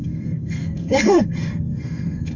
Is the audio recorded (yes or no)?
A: no